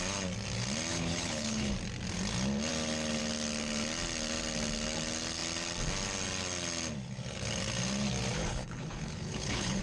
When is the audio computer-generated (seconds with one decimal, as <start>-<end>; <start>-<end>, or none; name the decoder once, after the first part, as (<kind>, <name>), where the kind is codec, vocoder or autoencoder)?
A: 0.9-1.7 (codec, HILCodec); 8.4-9.8